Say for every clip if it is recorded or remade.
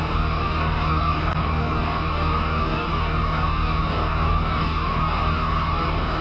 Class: remade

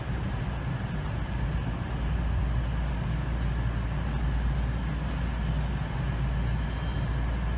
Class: recorded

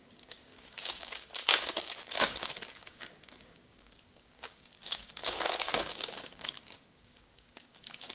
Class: remade